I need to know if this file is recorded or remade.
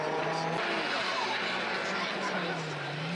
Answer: recorded